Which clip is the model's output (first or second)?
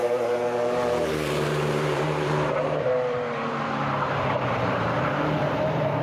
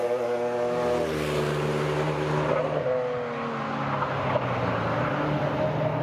first